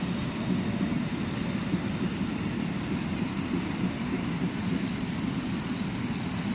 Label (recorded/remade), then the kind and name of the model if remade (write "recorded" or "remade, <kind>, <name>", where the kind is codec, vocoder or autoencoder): recorded